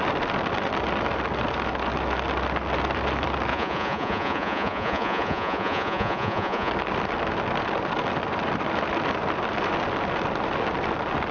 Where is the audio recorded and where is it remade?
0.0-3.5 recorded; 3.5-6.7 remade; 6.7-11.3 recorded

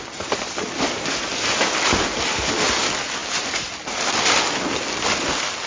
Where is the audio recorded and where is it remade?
0.0-5.7 recorded

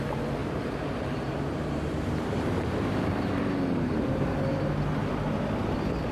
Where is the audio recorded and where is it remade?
0.0-0.4 recorded; 0.4-4.1 remade; 4.1-6.1 recorded

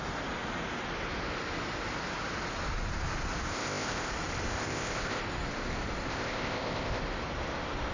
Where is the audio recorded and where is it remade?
0.0-3.5 recorded; 3.5-4.1 remade; 4.1-4.5 recorded; 4.5-5.2 remade; 5.2-6.1 recorded; 6.1-7.0 remade; 7.0-7.9 recorded

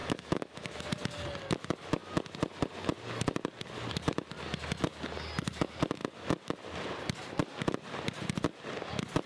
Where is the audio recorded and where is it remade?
0.0-0.8 remade; 0.8-9.3 recorded

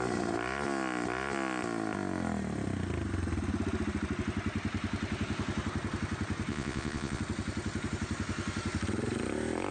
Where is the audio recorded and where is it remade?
0.0-6.5 recorded; 6.5-7.2 remade; 7.2-9.7 recorded

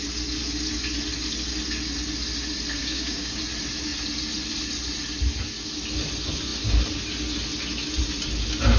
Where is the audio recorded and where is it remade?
0.0-2.8 recorded; 2.8-3.4 remade; 3.4-8.8 recorded

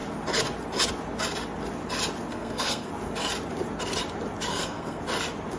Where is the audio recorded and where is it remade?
0.0-2.3 recorded; 2.3-2.9 remade; 2.9-4.5 recorded; 4.5-5.0 remade; 5.0-5.6 recorded